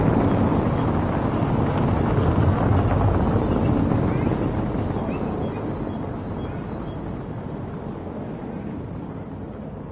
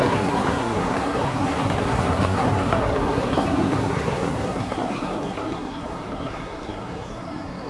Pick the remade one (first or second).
second